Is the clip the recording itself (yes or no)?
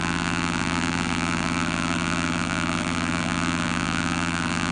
no